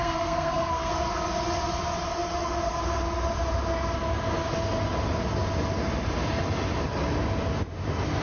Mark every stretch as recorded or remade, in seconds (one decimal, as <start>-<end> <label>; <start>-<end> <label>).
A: 0.0-0.9 remade; 0.9-8.2 recorded